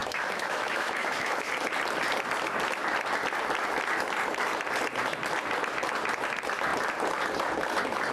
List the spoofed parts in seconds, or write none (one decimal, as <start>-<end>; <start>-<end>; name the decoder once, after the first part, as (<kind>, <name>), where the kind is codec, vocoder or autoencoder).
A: 0.0-1.5 (autoencoder, DAC-VAE)